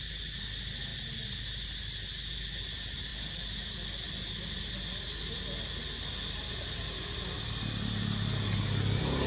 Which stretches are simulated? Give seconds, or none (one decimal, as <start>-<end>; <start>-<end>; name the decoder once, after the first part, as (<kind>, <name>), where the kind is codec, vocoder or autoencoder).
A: none